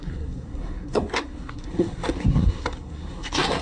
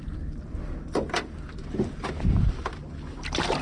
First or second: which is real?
second